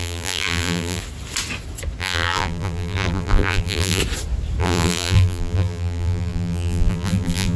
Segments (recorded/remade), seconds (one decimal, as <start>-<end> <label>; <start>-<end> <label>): 0.0-1.0 remade; 1.0-2.0 recorded; 2.0-4.0 remade; 4.0-4.6 recorded; 4.6-7.6 remade